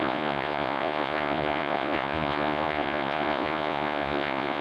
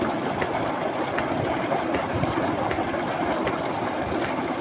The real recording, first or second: second